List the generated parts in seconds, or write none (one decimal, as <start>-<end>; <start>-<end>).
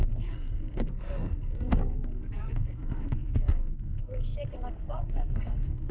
0.0-5.9